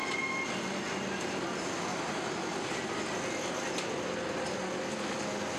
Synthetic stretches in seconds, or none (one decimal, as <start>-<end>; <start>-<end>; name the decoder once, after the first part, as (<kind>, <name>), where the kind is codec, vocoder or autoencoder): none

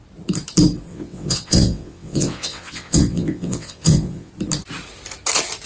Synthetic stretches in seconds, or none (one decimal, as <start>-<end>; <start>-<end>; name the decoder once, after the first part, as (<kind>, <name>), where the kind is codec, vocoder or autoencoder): 0.9-4.3 (vocoder, WaveNeXt)

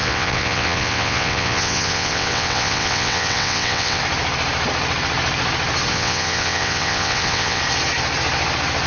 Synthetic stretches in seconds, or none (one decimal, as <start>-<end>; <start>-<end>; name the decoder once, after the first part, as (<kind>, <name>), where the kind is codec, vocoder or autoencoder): 0.0-4.0 (vocoder, WaveNeXt); 5.9-7.6

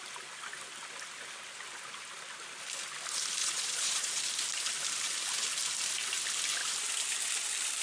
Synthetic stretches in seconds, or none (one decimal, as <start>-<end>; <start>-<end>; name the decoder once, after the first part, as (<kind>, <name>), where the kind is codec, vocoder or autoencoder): 3.4-4.2 (vocoder, Vocos)

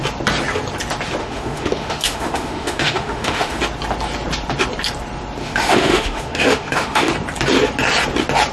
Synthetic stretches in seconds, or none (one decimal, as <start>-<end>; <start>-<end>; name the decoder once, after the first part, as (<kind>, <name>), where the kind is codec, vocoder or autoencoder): 1.2-3.6 (autoencoder, DAC-VAE); 5.4-7.1

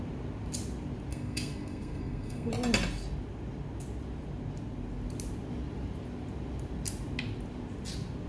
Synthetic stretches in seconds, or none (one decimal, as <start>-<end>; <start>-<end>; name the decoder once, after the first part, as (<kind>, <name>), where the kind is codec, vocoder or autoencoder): 1.1-2.5 (codec, SNAC)